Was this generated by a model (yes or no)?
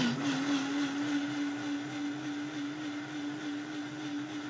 no